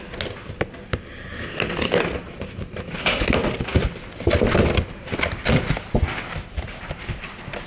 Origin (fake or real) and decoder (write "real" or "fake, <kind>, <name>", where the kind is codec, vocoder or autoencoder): real